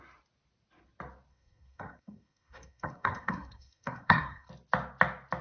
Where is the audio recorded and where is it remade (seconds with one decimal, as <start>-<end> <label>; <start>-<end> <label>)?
0.0-1.3 recorded; 1.3-4.5 remade; 4.5-5.4 recorded